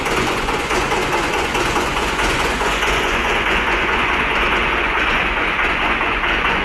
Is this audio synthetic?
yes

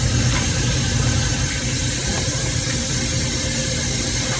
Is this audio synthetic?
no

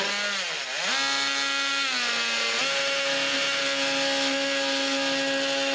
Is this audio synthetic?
no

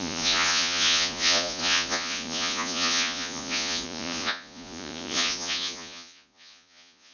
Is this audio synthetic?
yes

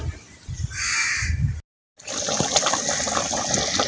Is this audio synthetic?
no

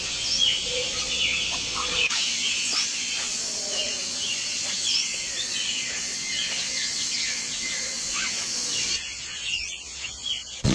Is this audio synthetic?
yes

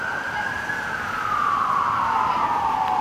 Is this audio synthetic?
no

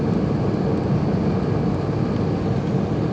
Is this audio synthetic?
no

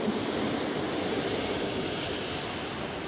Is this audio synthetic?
no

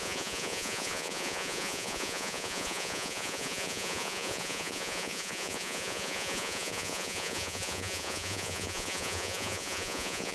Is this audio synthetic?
yes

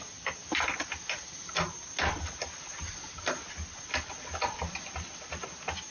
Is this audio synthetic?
no